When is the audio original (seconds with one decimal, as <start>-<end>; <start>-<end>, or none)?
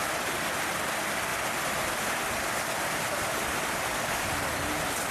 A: 0.0-5.1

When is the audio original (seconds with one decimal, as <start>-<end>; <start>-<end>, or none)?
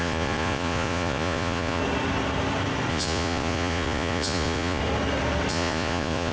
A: 1.8-2.9; 4.8-5.5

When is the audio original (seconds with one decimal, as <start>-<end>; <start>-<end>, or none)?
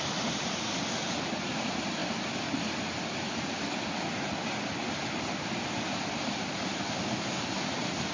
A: 0.0-8.1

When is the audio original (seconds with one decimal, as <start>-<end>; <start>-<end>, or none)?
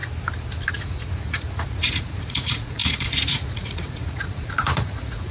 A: 0.0-0.7